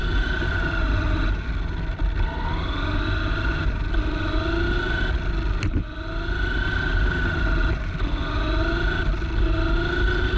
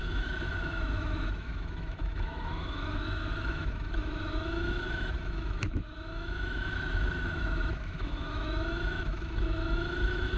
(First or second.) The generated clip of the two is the second